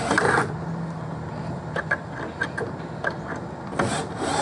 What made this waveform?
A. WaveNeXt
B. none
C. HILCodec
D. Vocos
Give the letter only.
B